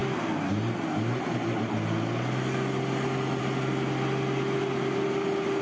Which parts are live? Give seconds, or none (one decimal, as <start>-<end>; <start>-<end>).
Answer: 0.0-5.6

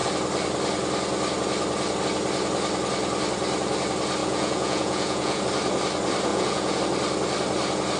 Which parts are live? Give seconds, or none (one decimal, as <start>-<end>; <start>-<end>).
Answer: 0.0-4.2; 5.4-6.3; 6.8-8.0

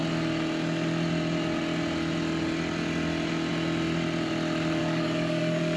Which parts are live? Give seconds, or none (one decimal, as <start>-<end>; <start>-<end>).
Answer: 0.0-4.8

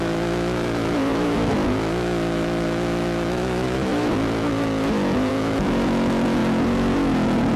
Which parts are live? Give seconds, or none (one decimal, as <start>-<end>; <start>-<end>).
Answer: none

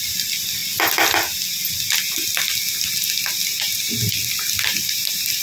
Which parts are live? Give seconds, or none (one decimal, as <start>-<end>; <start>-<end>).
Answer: 0.0-5.4

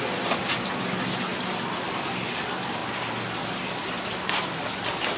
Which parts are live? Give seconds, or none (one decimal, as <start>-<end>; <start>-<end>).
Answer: 0.0-5.2